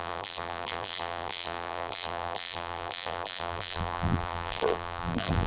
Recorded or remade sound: remade